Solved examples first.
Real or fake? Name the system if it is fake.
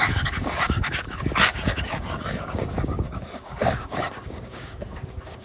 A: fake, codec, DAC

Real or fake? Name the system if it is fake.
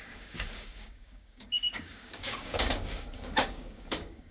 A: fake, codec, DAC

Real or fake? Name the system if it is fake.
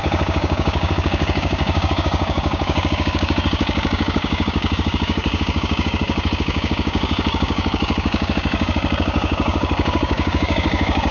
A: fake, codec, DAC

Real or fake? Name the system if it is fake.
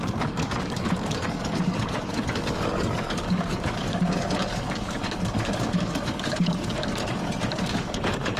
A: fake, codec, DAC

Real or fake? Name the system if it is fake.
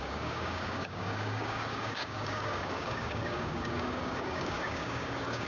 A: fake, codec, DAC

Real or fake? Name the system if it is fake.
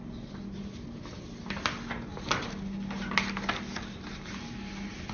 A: real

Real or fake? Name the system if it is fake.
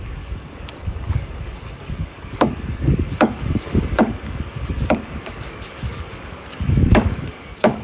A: fake, codec, DAC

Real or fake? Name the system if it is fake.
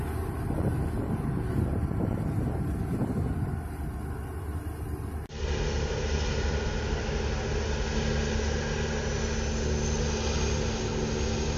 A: real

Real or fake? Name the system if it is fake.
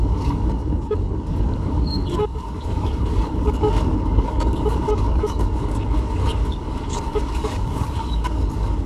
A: fake, codec, DAC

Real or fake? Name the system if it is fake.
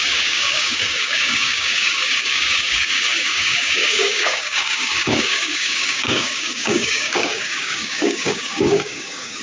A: fake, codec, DAC